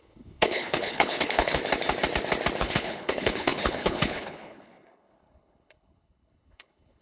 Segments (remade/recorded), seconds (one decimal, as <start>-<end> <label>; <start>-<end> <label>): 0.0-1.6 remade; 1.6-2.6 recorded; 2.6-7.0 remade